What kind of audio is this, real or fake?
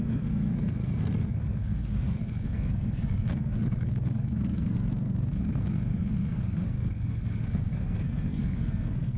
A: fake